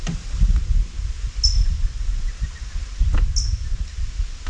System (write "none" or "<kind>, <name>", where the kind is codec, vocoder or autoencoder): none